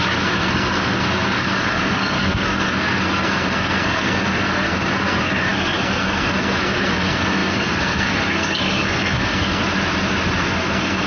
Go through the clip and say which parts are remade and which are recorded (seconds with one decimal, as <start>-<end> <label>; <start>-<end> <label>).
0.0-9.6 remade; 9.6-10.4 recorded; 10.4-11.1 remade